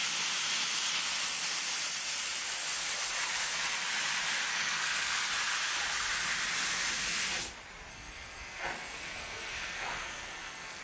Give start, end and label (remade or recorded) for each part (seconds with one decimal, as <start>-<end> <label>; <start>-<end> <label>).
0.0-4.5 recorded; 4.5-5.3 remade; 5.3-7.9 recorded; 7.9-10.8 remade

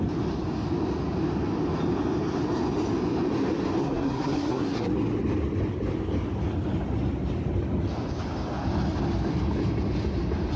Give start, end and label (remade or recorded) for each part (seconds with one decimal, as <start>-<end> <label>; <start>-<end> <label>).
0.0-3.8 recorded; 3.8-4.9 remade; 4.9-10.6 recorded

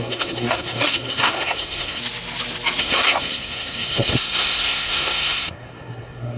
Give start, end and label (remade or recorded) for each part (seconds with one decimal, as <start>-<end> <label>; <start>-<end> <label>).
0.0-2.0 remade; 2.0-2.8 recorded; 2.8-6.4 remade

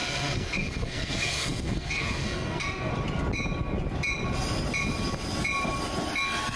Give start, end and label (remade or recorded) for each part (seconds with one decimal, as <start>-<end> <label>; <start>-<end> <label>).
0.0-2.9 remade; 2.9-6.6 recorded

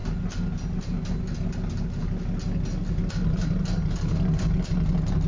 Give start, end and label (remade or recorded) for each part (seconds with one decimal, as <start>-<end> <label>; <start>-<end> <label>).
0.0-5.3 recorded

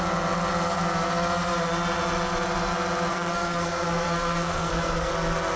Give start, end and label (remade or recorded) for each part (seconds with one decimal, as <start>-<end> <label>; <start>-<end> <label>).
0.0-3.1 recorded; 3.1-5.1 remade; 5.1-5.6 recorded